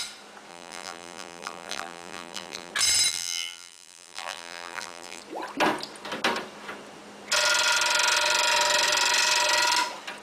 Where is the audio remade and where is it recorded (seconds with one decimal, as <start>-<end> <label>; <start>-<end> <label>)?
0.0-0.5 recorded; 0.5-2.7 remade; 2.7-3.1 recorded; 3.1-5.2 remade; 5.2-10.2 recorded